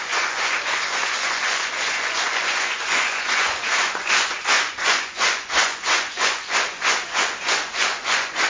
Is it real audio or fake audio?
fake